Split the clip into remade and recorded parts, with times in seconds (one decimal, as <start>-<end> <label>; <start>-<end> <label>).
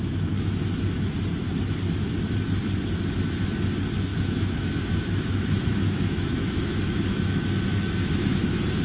0.0-4.1 recorded; 4.1-8.8 remade